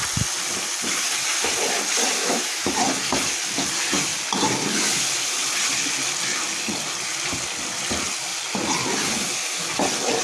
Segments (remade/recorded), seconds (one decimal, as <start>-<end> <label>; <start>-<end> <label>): 0.0-2.2 recorded; 2.2-2.7 remade; 2.7-10.2 recorded